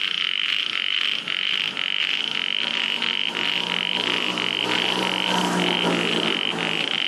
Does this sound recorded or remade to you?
recorded